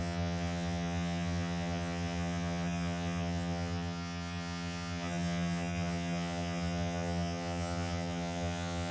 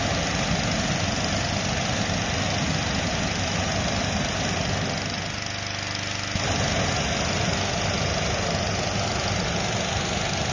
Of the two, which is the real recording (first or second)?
second